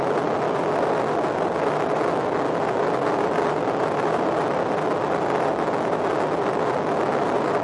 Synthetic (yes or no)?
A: no